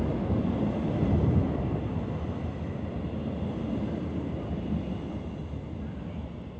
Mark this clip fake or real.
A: real